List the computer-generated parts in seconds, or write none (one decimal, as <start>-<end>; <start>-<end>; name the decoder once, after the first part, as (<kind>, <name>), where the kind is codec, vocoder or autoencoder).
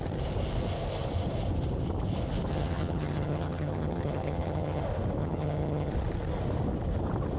2.5-4.8 (vocoder, HiFi-GAN); 5.2-5.9